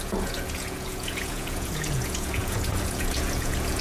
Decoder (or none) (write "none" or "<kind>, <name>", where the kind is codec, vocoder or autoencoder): vocoder, Vocos